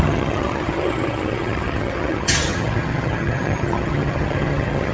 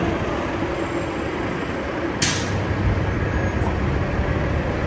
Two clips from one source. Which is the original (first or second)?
second